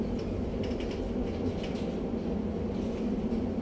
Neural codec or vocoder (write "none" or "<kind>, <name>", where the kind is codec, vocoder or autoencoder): none